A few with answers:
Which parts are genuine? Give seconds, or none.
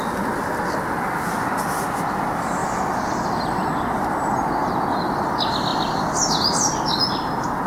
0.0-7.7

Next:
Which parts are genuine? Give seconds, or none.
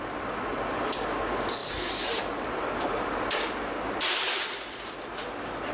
0.0-1.6; 5.0-5.7